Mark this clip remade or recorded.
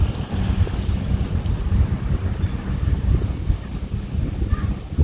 recorded